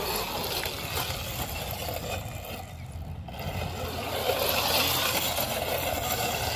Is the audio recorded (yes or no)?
yes